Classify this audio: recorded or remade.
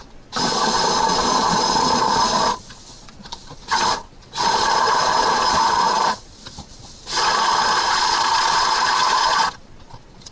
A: remade